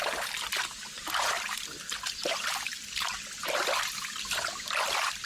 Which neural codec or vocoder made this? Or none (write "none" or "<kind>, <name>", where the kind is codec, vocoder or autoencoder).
vocoder, BigVGAN v2